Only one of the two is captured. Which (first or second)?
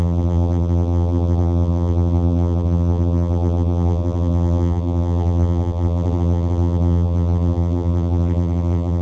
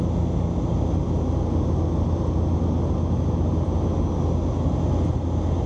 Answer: second